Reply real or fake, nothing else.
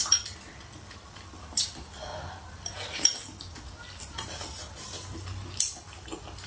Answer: real